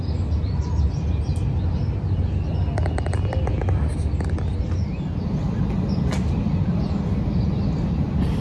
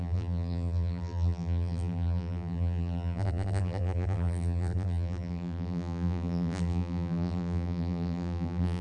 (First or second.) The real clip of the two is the first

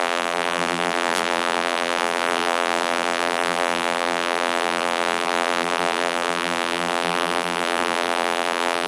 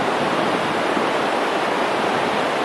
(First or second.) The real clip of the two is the second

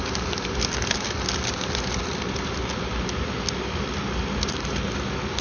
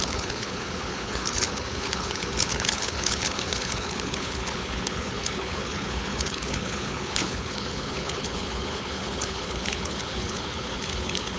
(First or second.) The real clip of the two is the first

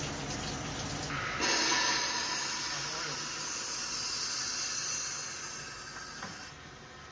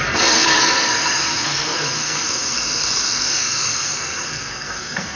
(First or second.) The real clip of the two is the first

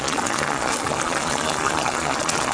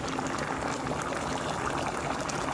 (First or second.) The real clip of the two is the second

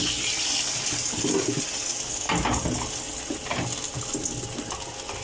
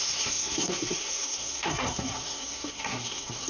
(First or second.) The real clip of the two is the first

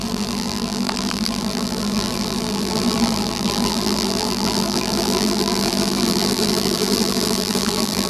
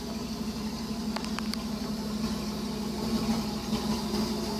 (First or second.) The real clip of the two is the second